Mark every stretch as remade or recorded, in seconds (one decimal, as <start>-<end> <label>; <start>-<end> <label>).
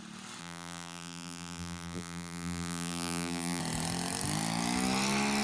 0.0-0.4 recorded; 0.4-3.6 remade; 3.6-5.4 recorded